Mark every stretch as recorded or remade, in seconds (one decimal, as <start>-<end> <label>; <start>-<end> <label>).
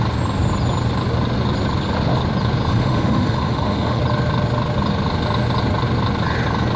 0.0-2.7 recorded; 2.7-4.0 remade; 4.0-6.8 recorded